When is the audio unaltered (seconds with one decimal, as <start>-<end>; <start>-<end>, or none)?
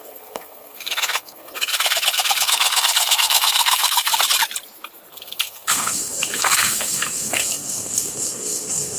4.1-5.1